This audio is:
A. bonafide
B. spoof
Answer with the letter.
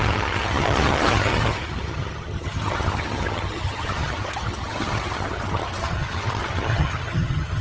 B